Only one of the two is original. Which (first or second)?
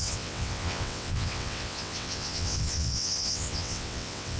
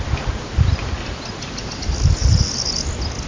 second